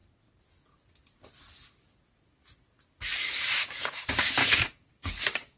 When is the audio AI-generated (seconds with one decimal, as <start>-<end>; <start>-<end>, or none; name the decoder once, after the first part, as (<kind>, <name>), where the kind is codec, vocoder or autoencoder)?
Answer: 3.3-5.6 (codec, DAC)